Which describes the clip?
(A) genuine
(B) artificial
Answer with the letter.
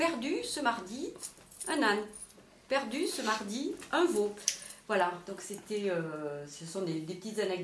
A